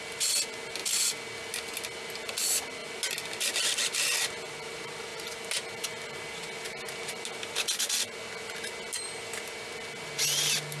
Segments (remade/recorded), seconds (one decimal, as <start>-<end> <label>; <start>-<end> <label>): 0.0-10.8 recorded